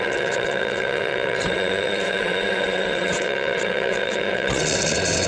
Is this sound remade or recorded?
remade